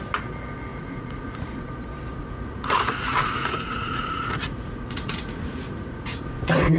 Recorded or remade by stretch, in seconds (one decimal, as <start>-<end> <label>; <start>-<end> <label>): 0.0-0.7 recorded; 0.7-1.7 remade; 1.7-2.1 recorded; 2.1-6.2 remade; 6.2-6.8 recorded